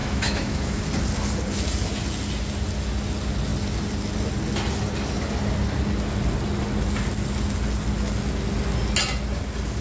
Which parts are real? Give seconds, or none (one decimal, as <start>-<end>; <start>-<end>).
0.8-9.8